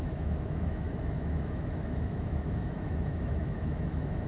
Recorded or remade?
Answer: remade